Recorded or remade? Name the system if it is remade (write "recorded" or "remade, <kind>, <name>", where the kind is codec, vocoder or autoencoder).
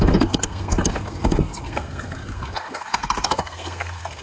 remade, codec, SNAC